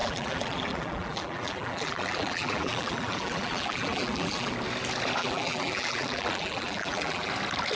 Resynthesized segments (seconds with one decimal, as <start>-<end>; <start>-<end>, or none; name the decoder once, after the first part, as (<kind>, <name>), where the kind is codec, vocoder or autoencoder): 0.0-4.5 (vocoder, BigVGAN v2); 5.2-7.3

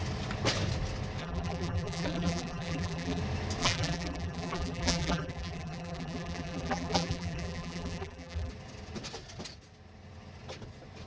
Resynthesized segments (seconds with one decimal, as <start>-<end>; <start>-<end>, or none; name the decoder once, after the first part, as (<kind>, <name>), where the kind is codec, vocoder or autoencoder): 1.2-3.2 (vocoder, BigVGAN v2); 3.6-8.5

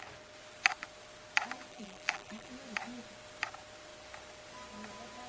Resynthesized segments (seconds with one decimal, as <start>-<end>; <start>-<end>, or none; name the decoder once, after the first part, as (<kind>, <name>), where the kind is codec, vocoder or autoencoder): 1.7-2.5 (vocoder, BigVGAN v2)

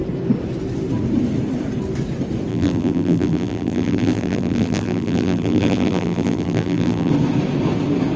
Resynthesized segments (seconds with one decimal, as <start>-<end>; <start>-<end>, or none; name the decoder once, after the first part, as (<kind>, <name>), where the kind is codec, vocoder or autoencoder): 2.5-7.1 (vocoder, BigVGAN v2)

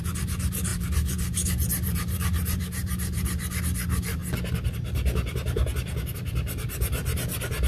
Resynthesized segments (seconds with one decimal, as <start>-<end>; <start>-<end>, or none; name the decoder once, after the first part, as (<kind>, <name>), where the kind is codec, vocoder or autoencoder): 0.0-4.2 (vocoder, BigVGAN v2)